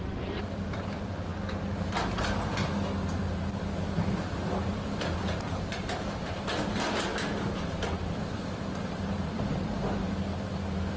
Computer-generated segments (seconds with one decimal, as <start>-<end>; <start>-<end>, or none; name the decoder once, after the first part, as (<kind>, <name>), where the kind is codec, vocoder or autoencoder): 0.0-1.3 (vocoder, BigVGAN v2); 3.5-11.0